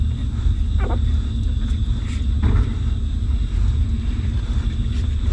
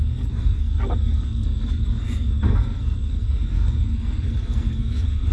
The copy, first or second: second